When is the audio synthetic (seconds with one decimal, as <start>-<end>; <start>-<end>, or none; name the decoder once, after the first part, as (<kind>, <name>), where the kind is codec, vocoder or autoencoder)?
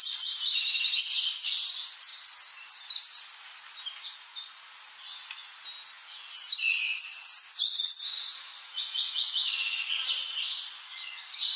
7.6-11.1 (vocoder, Vocos)